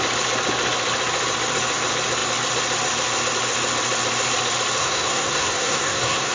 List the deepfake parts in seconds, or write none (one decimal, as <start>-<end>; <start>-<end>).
4.8-6.3